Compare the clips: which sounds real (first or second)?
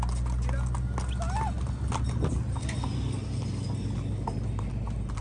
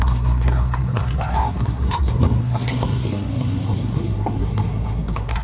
first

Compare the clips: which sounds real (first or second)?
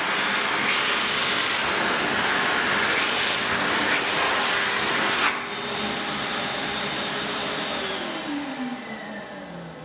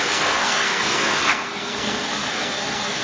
first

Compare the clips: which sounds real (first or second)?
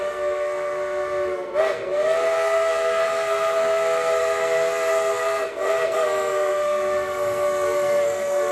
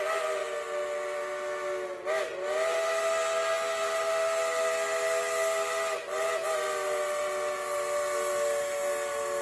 second